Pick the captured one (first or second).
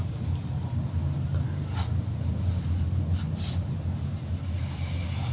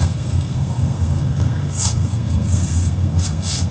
first